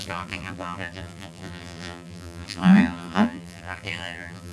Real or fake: fake